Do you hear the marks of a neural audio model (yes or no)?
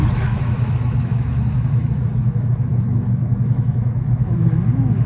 yes